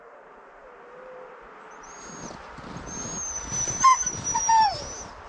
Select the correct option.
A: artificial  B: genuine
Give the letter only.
A